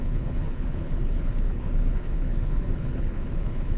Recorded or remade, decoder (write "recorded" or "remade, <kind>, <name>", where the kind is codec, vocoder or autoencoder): remade, codec, HILCodec